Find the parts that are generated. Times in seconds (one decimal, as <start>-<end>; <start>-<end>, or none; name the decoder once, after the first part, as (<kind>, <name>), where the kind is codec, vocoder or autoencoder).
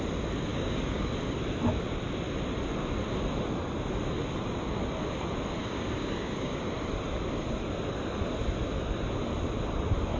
0.5-1.1 (codec, DAC); 5.6-6.6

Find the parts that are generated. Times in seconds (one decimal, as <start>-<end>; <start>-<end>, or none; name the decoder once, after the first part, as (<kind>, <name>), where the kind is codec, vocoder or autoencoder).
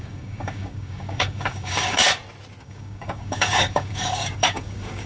0.0-2.0 (codec, DAC); 2.6-5.1